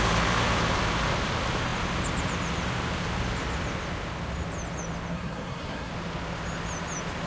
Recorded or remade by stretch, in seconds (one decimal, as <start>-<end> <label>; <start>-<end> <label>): 0.0-5.1 recorded; 5.1-5.9 remade; 5.9-7.3 recorded